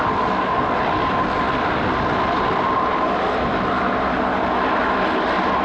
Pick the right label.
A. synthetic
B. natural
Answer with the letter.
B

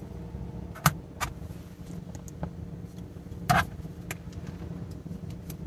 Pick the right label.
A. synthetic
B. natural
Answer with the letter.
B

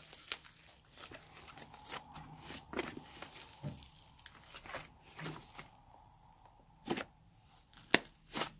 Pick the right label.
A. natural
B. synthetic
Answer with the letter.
A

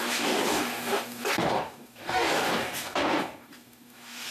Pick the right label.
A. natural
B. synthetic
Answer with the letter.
B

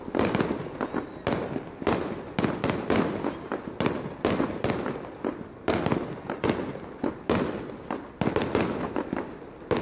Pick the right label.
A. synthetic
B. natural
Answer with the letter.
B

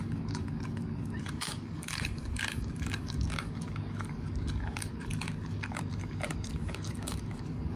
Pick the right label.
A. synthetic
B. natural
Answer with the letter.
A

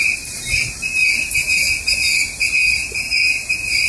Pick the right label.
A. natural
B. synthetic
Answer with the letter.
A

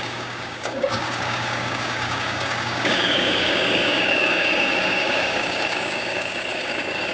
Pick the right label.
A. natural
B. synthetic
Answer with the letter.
B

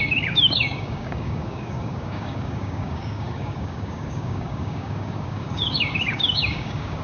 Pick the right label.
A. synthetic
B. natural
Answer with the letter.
A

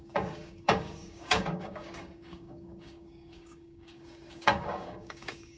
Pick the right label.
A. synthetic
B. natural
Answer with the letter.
A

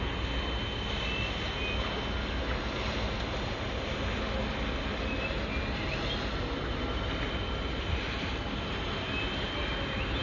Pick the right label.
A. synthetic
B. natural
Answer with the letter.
B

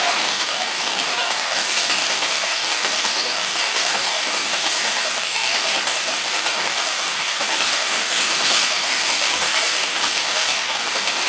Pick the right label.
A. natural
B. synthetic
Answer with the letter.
B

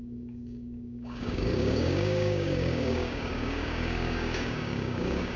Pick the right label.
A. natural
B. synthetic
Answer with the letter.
B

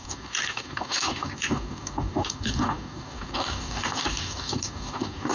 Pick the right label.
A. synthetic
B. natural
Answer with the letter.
A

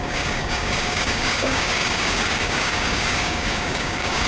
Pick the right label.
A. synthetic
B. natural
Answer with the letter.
A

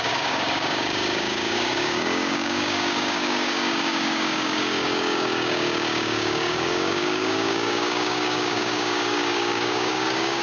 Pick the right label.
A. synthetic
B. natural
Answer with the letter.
A